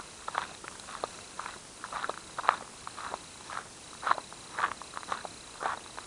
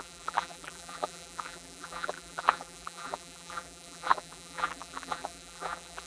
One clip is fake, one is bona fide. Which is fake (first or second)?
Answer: second